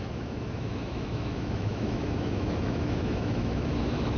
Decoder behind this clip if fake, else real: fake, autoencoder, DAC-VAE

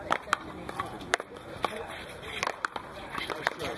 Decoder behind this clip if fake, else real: fake, vocoder, BigVGAN v2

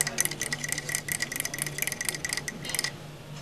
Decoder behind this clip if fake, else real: real